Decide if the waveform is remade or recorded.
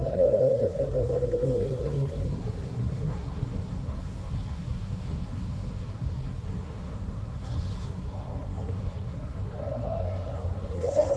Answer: remade